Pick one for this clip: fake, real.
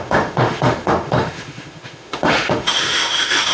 fake